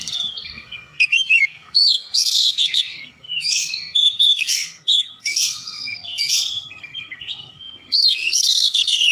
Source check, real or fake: fake